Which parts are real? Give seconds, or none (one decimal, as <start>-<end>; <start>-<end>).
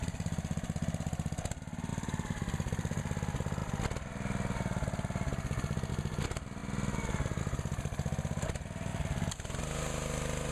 0.0-1.9; 3.0-8.9; 9.6-10.5